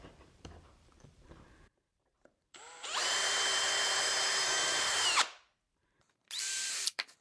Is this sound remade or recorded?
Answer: remade